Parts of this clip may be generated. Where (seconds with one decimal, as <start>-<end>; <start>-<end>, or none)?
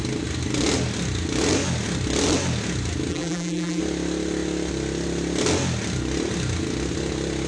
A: 3.1-3.8